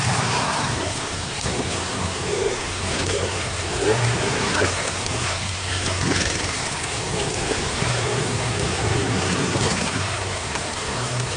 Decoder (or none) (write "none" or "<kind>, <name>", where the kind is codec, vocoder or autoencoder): codec, SNAC